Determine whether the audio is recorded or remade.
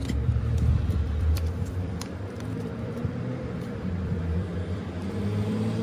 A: remade